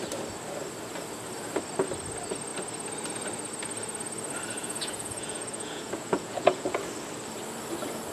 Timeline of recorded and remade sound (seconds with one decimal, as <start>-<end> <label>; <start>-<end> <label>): 0.0-4.6 recorded; 4.6-6.8 remade; 6.8-8.1 recorded